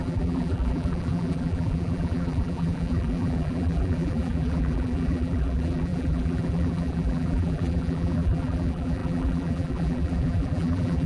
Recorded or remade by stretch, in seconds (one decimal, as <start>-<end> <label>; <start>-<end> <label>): 0.0-11.1 remade